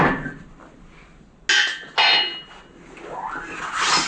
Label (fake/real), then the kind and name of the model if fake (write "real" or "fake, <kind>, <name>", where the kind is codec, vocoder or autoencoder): real